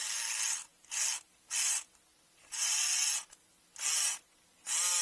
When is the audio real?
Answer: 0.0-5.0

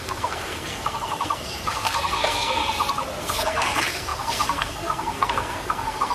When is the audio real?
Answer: 2.6-3.2

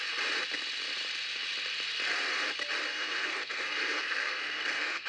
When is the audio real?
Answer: 0.0-2.9

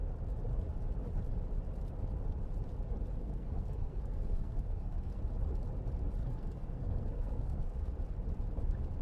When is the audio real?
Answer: 0.0-3.2; 5.2-6.2; 7.9-9.0

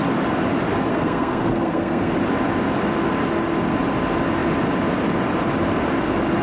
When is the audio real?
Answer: 0.0-0.9; 2.1-6.4

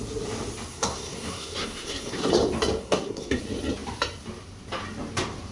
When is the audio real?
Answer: 0.0-0.7; 2.3-2.8; 3.4-5.5